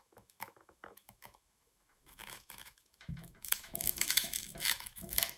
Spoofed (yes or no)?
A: yes